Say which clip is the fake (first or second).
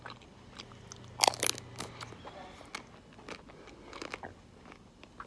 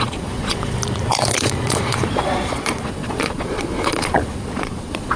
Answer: second